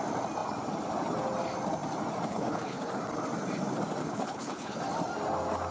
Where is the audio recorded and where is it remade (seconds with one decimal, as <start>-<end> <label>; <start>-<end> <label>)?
0.0-2.3 recorded; 2.3-2.9 remade; 2.9-4.0 recorded; 4.0-4.8 remade; 4.8-5.7 recorded